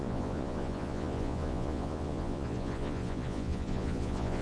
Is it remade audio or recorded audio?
remade